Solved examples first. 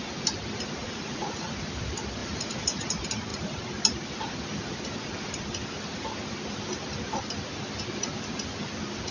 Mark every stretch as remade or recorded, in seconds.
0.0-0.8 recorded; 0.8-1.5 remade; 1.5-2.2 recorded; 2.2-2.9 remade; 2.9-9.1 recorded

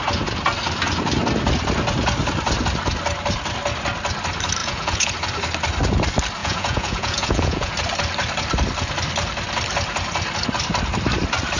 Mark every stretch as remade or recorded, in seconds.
0.0-4.6 recorded; 4.6-5.1 remade; 5.1-6.4 recorded; 6.4-7.7 remade; 7.7-11.6 recorded

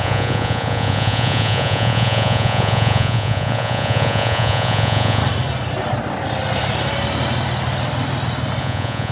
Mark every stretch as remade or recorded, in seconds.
0.0-5.2 remade; 5.2-8.6 recorded; 8.6-9.1 remade

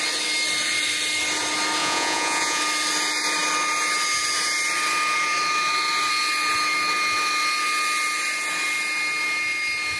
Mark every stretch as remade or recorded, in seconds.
0.0-1.8 recorded; 1.8-2.6 remade; 2.6-10.0 recorded

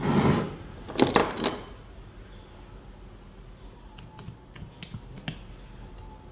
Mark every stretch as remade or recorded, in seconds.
0.0-6.3 recorded